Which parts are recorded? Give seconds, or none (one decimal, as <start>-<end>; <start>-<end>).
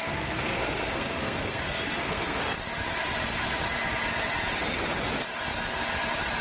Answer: 2.4-6.4